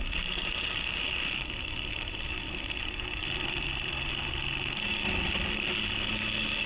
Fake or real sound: real